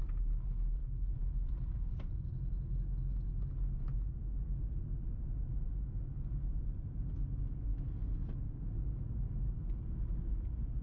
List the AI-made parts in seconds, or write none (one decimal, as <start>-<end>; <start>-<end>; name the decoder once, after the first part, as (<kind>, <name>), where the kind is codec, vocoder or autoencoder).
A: 0.8-1.5 (autoencoder, DAC-VAE)